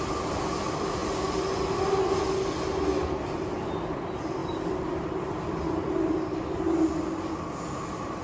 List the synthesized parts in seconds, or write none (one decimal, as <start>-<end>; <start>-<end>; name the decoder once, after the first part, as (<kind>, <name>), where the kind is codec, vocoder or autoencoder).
4.4-6.5 (vocoder, BigVGAN v2)